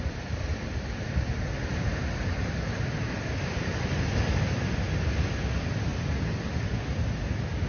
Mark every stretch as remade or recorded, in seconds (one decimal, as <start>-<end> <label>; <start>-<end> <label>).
0.0-7.7 recorded